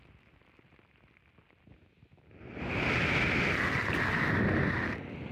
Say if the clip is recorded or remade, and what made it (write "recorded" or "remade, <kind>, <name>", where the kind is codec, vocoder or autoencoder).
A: recorded